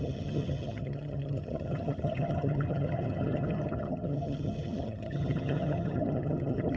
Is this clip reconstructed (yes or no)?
yes